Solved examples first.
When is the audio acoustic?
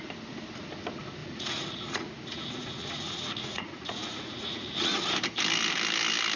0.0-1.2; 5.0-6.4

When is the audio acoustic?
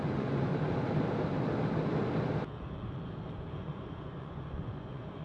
0.5-3.6